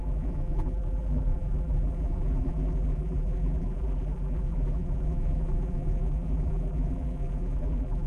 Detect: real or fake fake